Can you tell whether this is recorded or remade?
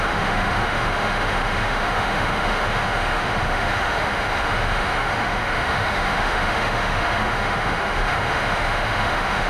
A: remade